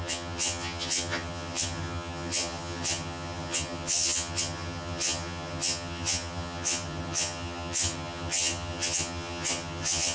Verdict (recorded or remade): remade